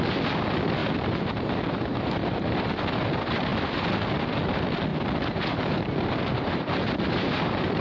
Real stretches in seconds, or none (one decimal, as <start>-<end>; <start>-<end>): 0.0-0.8; 2.7-4.9